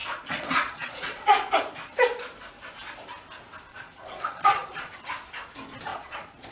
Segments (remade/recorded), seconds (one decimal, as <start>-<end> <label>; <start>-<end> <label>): 0.0-1.5 remade; 1.5-3.7 recorded; 3.7-4.9 remade; 4.9-5.9 recorded; 5.9-6.5 remade